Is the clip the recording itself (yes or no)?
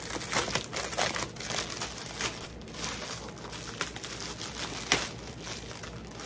yes